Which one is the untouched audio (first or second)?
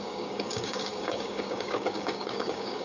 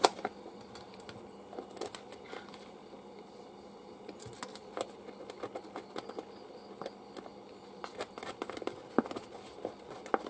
second